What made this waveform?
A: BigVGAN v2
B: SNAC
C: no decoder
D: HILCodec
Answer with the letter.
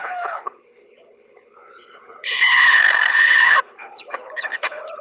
D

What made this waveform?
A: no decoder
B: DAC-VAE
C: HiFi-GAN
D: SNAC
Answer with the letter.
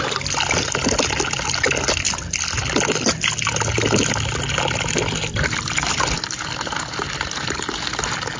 A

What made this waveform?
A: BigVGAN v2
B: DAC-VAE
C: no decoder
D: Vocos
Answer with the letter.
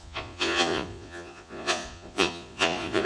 D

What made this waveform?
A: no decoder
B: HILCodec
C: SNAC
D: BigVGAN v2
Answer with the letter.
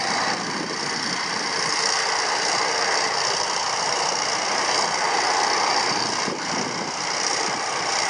A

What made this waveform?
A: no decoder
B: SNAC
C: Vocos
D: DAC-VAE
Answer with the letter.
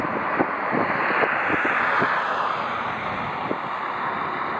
A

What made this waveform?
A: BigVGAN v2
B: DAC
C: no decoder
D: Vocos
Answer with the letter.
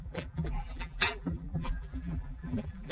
A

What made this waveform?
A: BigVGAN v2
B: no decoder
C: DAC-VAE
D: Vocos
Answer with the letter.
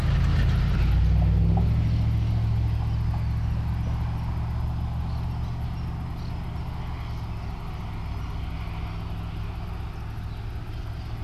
B